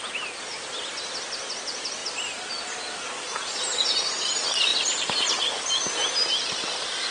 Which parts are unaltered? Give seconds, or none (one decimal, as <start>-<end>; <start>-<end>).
0.0-7.1